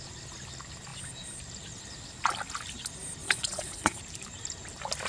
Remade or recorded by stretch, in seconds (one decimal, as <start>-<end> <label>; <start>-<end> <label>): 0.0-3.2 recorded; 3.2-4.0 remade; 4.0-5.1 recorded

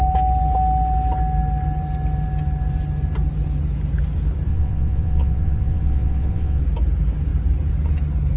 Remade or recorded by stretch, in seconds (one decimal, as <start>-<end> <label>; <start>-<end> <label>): 0.0-4.5 recorded; 4.5-6.6 remade; 6.6-8.4 recorded

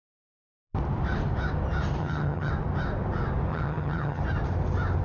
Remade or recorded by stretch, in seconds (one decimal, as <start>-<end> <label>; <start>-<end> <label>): 0.0-2.0 recorded; 2.0-2.5 remade; 2.5-3.5 recorded; 3.5-4.2 remade; 4.2-5.0 recorded

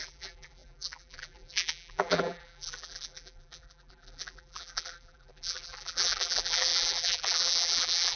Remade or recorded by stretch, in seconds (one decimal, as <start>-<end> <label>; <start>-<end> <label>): 0.0-8.2 remade

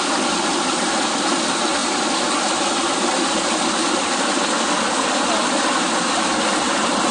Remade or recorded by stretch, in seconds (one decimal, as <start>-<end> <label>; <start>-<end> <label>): 0.0-7.1 recorded

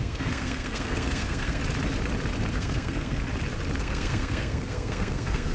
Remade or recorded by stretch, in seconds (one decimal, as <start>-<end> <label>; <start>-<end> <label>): 0.0-1.6 remade; 1.6-2.5 recorded; 2.5-3.2 remade; 3.2-3.8 recorded; 3.8-5.5 remade

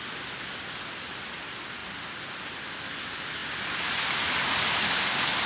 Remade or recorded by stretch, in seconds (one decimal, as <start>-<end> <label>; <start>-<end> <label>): 0.0-5.5 recorded

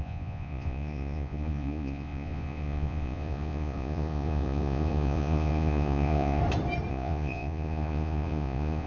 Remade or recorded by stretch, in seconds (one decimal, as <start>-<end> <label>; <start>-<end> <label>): 0.0-6.4 remade; 6.4-6.9 recorded; 6.9-8.9 remade